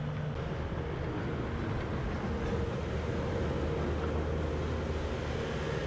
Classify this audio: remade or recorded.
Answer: recorded